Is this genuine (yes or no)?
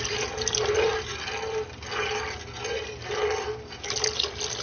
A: yes